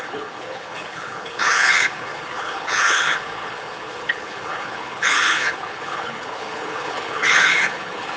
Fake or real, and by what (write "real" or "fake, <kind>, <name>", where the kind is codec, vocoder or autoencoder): fake, codec, HILCodec